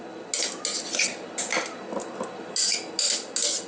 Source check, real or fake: real